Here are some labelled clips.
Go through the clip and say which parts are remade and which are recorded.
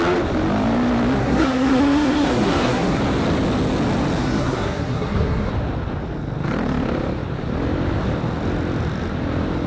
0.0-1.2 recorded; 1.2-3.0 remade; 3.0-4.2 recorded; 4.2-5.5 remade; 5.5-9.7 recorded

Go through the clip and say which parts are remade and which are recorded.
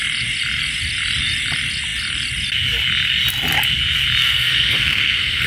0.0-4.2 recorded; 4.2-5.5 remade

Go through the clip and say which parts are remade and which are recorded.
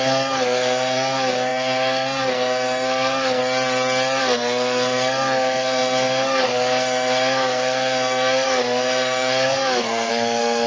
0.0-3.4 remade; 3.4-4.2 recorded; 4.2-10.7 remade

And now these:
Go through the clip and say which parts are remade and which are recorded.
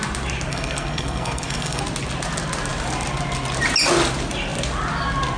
0.0-0.5 recorded; 0.5-1.8 remade; 1.8-5.4 recorded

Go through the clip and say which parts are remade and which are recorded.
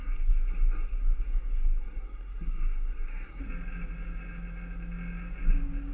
0.0-3.4 remade; 3.4-5.9 recorded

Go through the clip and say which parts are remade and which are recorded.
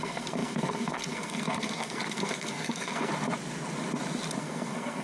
0.0-3.1 remade; 3.1-4.4 recorded; 4.4-5.0 remade